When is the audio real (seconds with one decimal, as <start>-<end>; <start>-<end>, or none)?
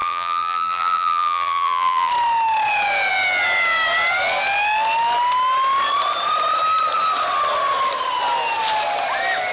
2.1-9.5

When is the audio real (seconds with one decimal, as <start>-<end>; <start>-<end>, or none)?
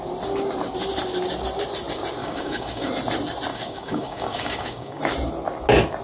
0.0-2.2; 2.9-3.5; 5.0-6.0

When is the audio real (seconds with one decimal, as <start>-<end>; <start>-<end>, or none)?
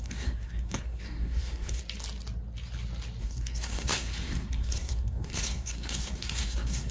1.8-3.2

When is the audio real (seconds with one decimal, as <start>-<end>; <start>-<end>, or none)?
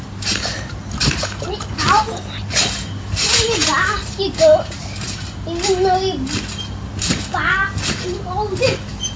0.0-9.2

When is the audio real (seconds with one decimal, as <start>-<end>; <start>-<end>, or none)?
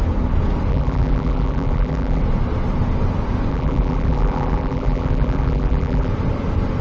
0.0-0.7; 2.2-3.5; 6.1-6.8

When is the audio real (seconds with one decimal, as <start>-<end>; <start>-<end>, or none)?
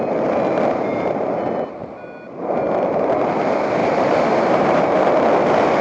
0.0-3.8; 5.1-5.8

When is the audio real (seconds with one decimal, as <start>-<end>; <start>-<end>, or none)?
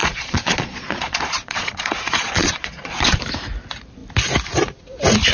3.2-5.3